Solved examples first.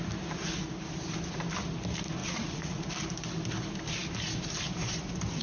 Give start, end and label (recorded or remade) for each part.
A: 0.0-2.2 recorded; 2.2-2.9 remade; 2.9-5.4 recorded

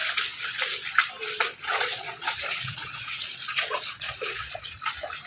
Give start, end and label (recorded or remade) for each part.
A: 0.0-1.5 recorded; 1.5-4.7 remade; 4.7-5.3 recorded